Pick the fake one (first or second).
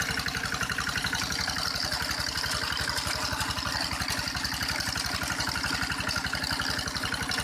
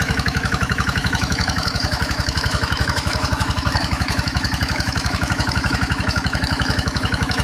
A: second